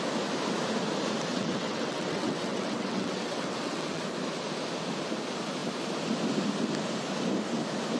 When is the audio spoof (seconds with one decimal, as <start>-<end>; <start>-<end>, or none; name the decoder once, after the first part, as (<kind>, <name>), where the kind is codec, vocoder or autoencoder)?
1.3-4.0 (vocoder, WaveNeXt)